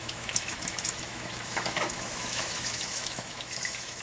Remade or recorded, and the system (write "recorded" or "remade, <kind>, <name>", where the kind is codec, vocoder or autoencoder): remade, autoencoder, DAC-VAE